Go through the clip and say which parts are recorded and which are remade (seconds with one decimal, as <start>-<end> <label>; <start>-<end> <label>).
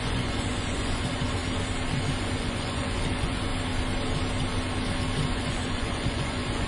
0.0-1.4 remade; 1.4-2.2 recorded; 2.2-3.5 remade; 3.5-5.3 recorded; 5.3-6.7 remade